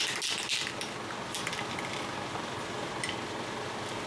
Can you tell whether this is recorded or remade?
recorded